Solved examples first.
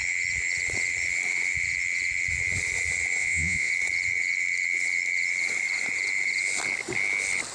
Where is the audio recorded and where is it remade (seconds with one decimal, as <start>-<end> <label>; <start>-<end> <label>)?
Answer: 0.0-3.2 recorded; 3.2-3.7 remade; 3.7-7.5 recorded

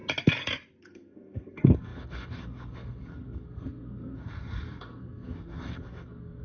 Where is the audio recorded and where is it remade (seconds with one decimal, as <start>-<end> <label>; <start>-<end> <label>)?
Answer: 0.0-0.8 recorded; 0.8-6.4 remade

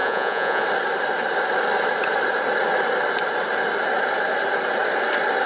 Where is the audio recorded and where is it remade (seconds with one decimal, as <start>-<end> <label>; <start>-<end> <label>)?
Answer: 0.0-0.6 remade; 0.6-5.5 recorded